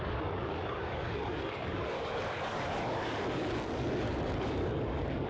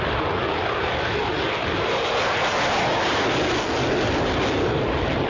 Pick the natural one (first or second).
second